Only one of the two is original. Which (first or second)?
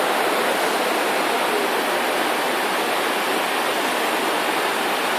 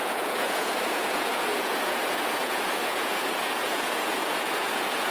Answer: first